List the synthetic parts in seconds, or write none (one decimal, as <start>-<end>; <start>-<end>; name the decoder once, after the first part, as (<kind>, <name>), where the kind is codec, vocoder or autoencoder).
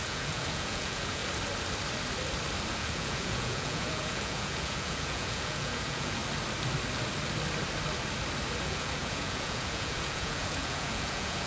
0.0-1.2 (vocoder, Vocos); 2.7-6.2; 8.6-11.5